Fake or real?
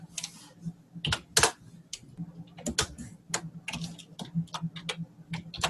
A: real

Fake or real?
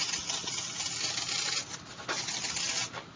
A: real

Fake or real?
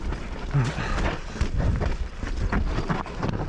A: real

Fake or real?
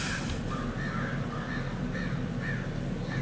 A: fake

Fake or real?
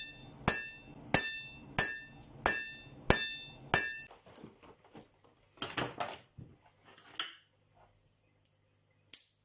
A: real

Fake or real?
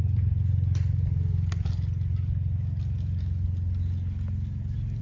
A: real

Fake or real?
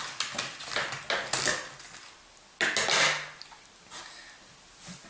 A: real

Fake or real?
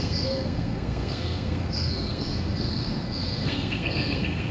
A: fake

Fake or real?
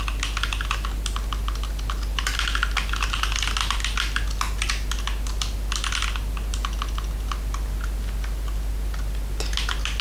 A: real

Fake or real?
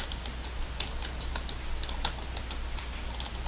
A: real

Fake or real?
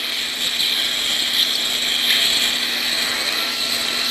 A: real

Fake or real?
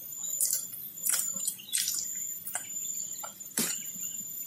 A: fake